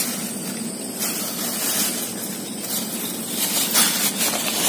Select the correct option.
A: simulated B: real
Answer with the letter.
B